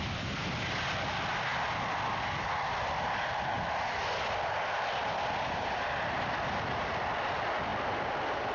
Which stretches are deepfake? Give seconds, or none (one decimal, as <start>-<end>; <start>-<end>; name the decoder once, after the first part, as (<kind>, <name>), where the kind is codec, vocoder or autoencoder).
none